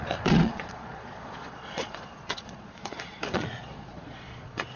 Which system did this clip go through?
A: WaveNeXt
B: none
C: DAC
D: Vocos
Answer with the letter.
D